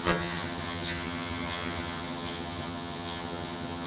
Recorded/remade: remade